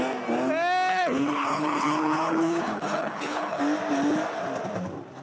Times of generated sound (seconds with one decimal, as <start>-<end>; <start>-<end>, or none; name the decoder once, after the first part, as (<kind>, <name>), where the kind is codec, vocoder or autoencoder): 0.9-3.6 (codec, HILCodec)